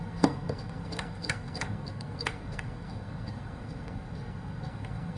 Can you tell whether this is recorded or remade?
remade